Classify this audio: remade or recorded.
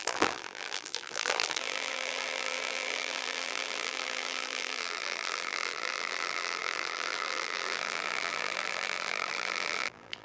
remade